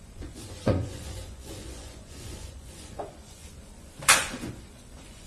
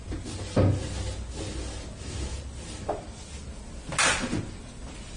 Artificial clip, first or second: first